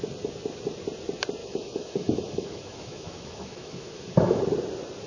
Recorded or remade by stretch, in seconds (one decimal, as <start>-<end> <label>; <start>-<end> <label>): 0.0-1.4 recorded; 1.4-4.4 remade; 4.4-5.1 recorded